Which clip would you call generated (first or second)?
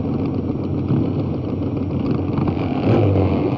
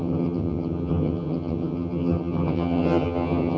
second